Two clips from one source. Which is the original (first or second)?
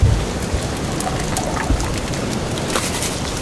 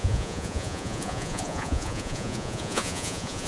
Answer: first